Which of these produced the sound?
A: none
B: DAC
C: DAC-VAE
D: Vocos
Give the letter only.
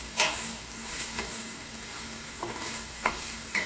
B